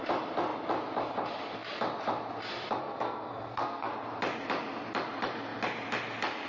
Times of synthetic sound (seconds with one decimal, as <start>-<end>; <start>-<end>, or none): 2.8-3.9